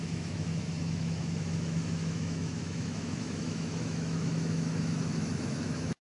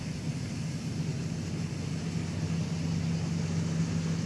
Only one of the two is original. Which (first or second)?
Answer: second